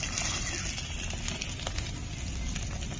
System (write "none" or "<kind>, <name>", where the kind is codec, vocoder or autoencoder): none